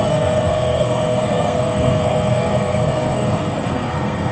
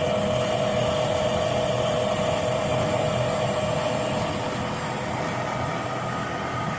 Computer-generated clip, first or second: first